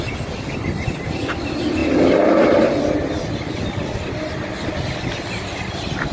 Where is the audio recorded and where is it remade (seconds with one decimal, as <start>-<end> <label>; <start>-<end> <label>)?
0.0-6.1 recorded